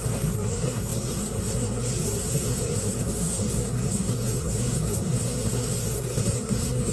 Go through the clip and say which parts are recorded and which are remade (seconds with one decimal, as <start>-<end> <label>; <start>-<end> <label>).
0.0-6.9 remade